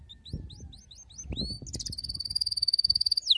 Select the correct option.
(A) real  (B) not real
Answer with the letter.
A